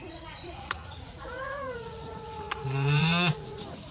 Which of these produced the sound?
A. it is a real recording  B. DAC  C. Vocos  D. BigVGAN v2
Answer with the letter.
C